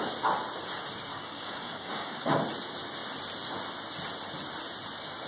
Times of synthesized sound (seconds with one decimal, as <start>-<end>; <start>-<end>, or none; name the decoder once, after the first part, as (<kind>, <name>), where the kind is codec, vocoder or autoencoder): 1.1-2.4 (codec, DAC)